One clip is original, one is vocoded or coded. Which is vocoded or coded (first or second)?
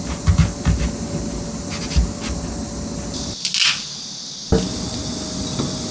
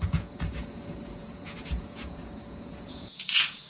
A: second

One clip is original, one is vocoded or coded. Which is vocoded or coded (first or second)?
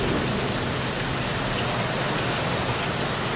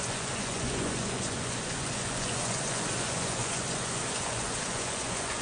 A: second